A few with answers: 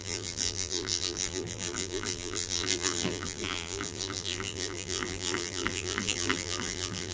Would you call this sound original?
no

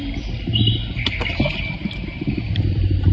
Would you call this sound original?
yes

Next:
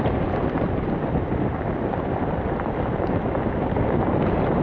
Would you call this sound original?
no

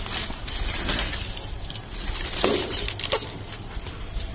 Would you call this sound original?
no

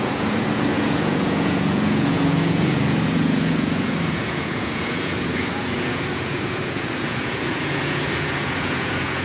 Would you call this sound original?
no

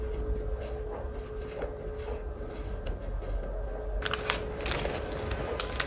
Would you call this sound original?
yes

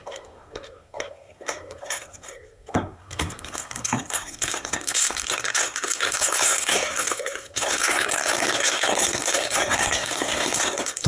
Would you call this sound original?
no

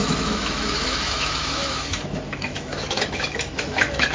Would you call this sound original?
no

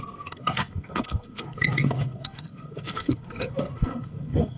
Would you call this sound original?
no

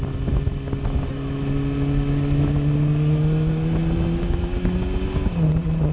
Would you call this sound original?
yes